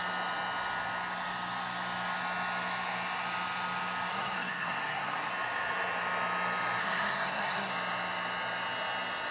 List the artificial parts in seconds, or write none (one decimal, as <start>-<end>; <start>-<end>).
4.1-5.3; 6.8-7.7